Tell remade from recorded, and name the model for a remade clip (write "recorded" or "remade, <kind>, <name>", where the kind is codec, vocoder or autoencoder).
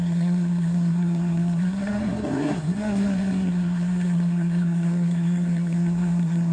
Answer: remade, codec, SNAC